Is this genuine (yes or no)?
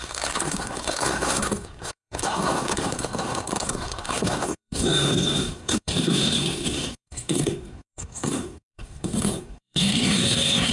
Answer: no